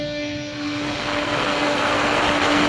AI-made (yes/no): yes